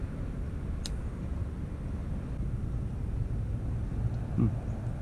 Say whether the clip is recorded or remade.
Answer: recorded